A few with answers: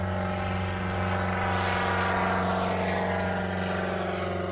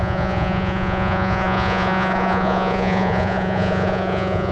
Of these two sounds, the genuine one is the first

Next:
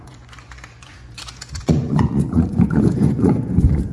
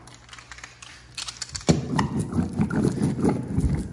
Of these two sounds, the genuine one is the second